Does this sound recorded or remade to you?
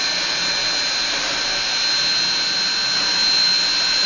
recorded